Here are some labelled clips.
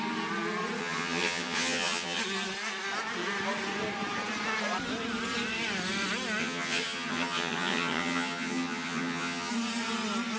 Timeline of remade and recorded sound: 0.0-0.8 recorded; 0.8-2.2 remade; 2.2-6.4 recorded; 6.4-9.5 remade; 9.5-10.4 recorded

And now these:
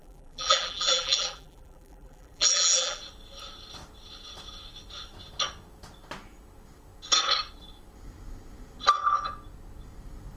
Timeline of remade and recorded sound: 0.0-3.0 remade; 3.0-10.4 recorded